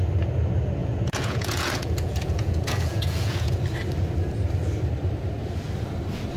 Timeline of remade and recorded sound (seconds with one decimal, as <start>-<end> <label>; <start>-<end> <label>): 0.0-0.8 recorded; 0.8-3.6 remade; 3.6-6.4 recorded